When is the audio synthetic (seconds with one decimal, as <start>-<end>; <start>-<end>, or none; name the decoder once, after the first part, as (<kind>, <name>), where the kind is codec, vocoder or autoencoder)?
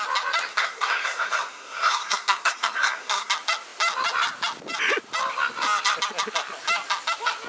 0.5-3.3 (codec, SNAC)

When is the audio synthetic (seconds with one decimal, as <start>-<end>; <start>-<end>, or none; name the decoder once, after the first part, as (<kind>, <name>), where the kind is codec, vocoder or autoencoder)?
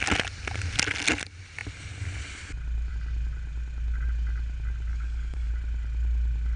4.9-5.5 (codec, DAC)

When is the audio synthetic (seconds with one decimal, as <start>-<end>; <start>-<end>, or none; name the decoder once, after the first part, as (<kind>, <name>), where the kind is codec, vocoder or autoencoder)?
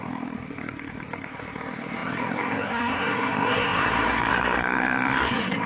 0.0-5.7 (codec, SNAC)